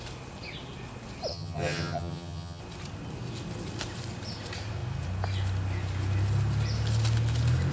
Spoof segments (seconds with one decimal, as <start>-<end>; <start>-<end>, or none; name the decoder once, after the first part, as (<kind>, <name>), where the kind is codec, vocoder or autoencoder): 1.3-2.6 (vocoder, HiFi-GAN)